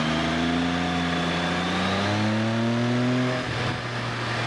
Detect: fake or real real